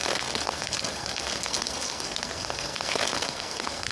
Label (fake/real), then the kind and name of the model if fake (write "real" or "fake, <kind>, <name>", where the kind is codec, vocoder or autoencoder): fake, codec, SNAC